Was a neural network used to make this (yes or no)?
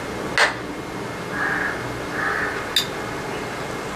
no